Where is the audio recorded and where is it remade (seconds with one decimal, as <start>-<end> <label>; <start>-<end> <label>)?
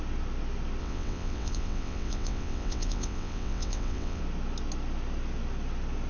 0.0-0.8 recorded; 0.8-4.2 remade; 4.2-6.1 recorded